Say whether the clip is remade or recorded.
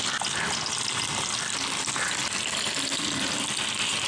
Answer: recorded